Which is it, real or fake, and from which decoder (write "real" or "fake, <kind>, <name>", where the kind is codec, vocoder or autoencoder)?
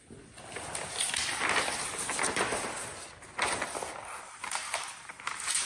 real